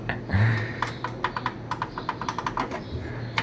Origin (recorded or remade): recorded